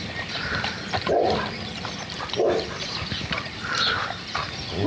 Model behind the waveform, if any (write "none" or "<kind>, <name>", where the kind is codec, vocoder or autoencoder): none